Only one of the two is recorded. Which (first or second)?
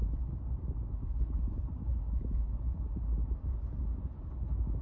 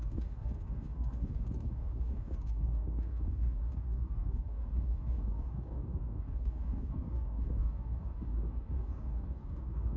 first